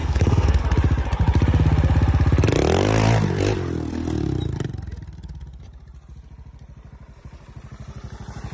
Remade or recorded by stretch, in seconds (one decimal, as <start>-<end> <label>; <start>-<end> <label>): 0.0-0.6 remade; 0.6-8.5 recorded